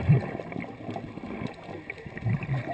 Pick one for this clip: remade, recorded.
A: recorded